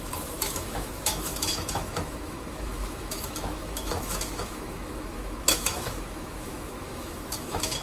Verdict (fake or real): fake